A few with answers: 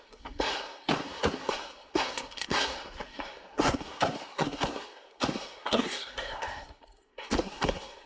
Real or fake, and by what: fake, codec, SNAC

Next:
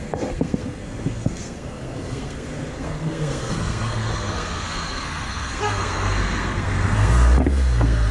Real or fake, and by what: fake, codec, SNAC